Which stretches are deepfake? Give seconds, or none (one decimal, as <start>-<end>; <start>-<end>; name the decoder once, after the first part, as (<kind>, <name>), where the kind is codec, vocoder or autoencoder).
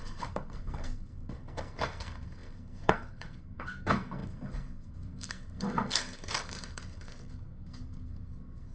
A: 0.0-8.7 (codec, SNAC)